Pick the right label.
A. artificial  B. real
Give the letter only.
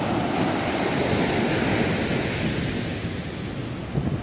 B